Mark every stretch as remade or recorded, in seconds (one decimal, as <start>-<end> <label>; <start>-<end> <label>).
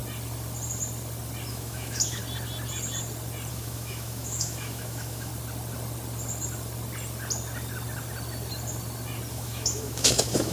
0.0-1.5 recorded; 1.5-2.2 remade; 2.2-3.5 recorded; 3.5-5.3 remade; 5.3-9.3 recorded; 9.3-10.5 remade